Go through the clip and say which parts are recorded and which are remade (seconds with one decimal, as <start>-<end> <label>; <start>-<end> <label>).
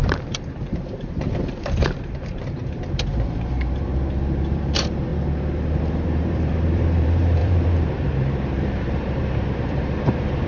0.0-5.1 remade; 5.1-5.8 recorded; 5.8-10.5 remade